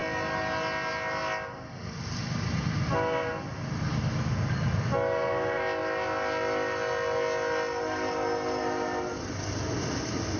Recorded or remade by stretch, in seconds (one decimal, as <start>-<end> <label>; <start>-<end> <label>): 0.0-10.4 recorded